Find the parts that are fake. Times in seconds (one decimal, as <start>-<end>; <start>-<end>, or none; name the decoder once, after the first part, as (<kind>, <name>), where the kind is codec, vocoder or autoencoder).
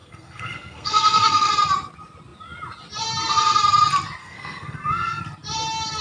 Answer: 0.0-1.5 (codec, SNAC); 4.2-5.2